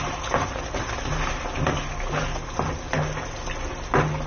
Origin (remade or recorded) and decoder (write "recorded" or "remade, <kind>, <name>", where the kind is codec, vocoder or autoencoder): recorded